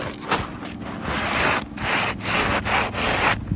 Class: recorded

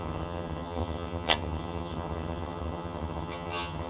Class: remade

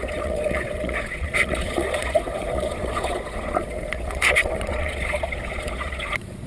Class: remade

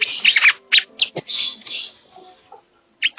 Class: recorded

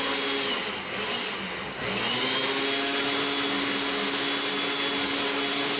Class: recorded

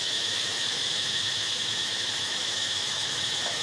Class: remade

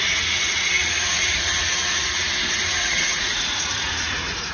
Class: remade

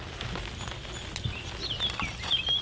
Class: recorded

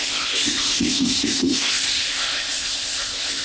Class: remade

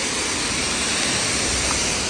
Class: recorded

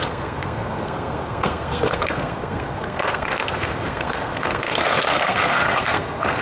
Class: remade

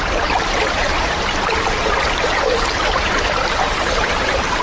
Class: remade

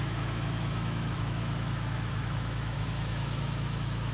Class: remade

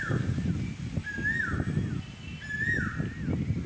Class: recorded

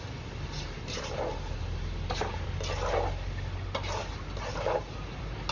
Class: recorded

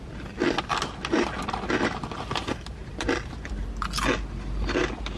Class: recorded